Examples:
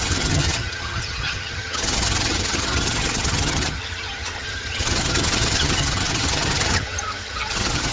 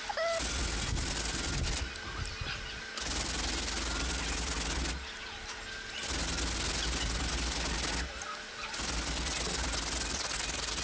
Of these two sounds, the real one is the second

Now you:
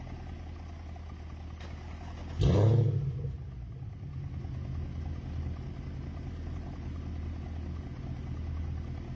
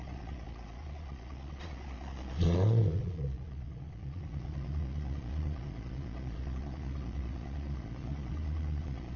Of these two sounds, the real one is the first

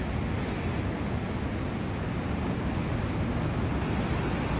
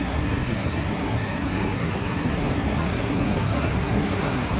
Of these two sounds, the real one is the first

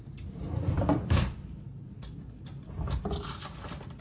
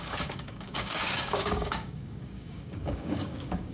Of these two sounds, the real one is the first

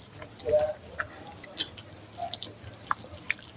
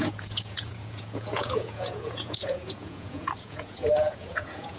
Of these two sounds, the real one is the first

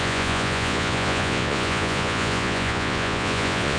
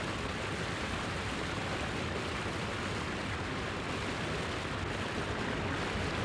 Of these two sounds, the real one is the second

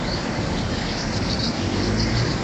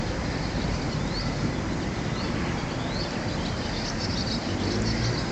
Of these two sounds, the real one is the second